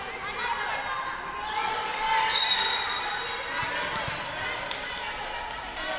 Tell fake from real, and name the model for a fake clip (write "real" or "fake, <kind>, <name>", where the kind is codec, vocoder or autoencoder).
real